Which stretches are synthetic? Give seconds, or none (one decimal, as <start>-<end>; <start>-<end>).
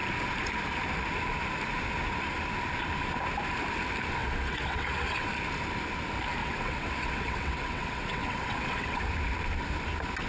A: 4.2-5.3; 6.4-9.0